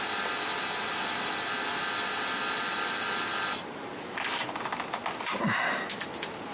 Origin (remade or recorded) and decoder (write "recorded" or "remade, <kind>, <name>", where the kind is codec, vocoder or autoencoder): recorded